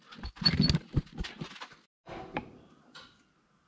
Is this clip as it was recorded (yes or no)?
yes